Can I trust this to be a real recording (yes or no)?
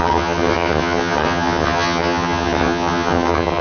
no